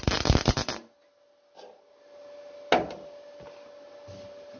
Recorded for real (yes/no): yes